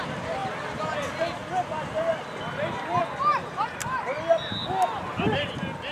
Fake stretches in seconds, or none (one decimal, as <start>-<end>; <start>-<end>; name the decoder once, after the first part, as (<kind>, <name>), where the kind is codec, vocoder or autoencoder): 1.4-3.0 (vocoder, BigVGAN v2); 4.6-5.3